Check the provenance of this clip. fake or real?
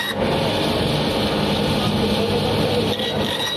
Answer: real